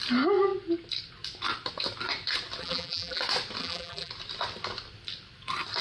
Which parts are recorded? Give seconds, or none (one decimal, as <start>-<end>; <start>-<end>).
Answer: 0.0-2.6; 3.2-3.6; 4.1-5.8